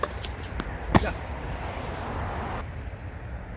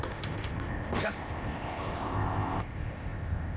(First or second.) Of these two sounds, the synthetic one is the second